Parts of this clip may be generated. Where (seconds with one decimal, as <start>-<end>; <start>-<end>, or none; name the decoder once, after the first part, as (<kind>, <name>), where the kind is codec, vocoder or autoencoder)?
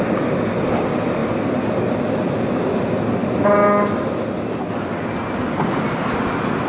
none